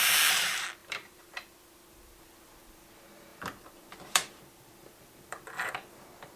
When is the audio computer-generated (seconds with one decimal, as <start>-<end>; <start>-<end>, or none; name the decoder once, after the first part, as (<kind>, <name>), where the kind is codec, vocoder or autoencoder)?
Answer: 0.8-2.9 (vocoder, BigVGAN v2); 3.3-6.0